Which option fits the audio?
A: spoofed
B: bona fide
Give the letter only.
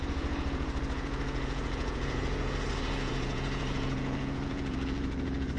A